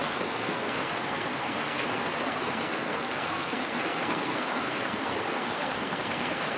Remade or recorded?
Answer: remade